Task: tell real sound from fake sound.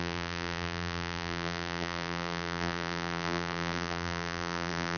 fake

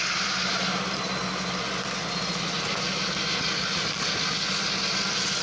real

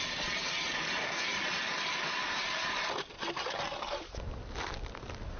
real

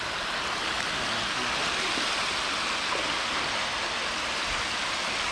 real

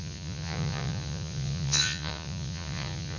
fake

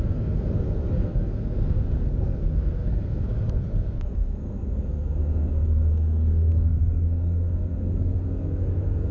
fake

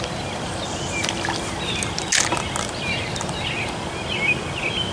real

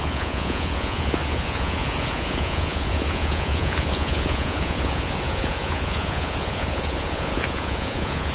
fake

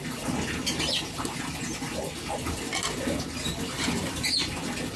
real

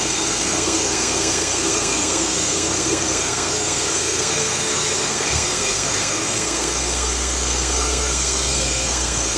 fake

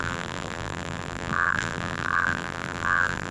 fake